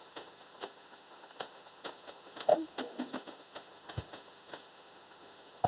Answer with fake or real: fake